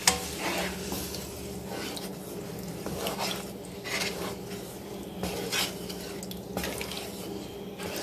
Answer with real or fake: real